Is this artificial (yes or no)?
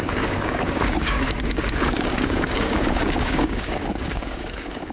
yes